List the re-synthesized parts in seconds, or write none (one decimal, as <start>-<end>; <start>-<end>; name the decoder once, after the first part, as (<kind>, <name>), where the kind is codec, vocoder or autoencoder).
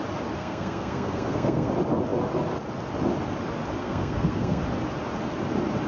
0.4-1.7 (codec, SNAC); 3.8-4.6